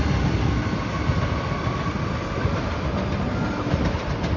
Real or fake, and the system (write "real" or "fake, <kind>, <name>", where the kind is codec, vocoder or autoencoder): real